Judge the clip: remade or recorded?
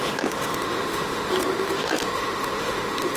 remade